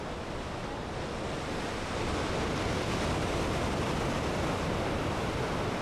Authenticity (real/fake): real